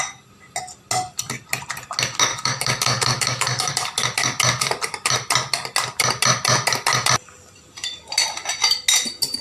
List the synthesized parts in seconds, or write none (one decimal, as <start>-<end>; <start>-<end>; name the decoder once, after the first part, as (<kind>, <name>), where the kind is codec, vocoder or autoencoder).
2.3-3.7 (codec, DAC)